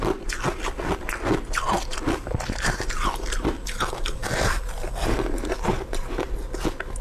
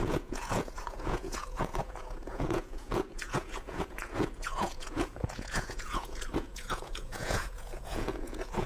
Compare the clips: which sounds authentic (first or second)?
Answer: first